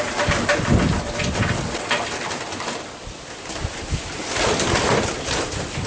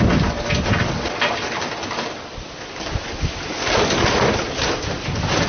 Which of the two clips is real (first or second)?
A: second